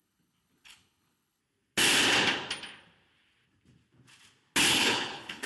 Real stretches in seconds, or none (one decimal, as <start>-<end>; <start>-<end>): 1.4-4.7